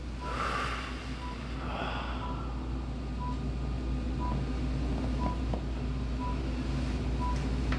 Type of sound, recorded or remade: recorded